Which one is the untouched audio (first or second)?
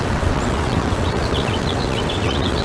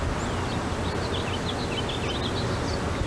second